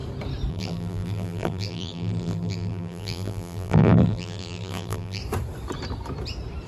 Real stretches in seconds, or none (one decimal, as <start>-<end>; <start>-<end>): 0.0-0.5; 5.2-6.7